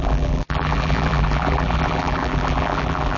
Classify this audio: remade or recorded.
remade